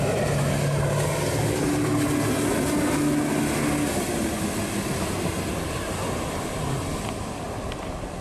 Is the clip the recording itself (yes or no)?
yes